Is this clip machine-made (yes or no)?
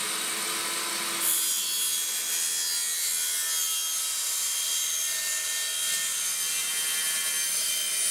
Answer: no